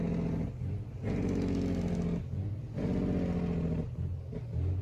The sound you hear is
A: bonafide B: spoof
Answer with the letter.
A